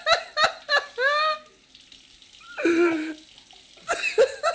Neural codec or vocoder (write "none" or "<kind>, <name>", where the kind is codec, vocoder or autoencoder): none